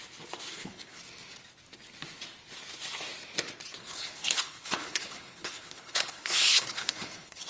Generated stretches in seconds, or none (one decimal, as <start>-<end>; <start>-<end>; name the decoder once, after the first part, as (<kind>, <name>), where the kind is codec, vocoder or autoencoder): 0.5-1.0 (codec, HILCodec); 3.8-7.5